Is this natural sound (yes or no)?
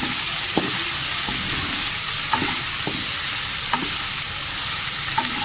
yes